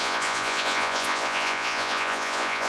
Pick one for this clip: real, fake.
fake